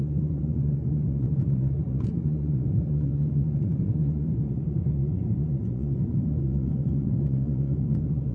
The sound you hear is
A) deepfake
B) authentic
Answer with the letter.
A